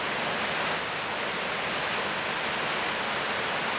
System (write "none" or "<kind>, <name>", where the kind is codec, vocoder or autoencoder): none